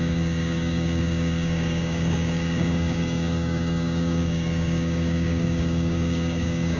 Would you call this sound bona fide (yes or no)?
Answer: no